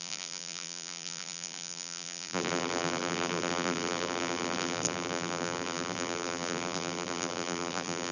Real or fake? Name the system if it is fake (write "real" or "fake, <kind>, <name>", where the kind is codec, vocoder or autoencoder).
fake, vocoder, BigVGAN v2